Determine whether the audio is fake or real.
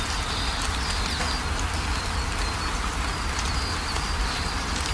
real